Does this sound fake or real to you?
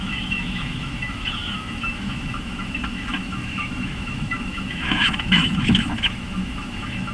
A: fake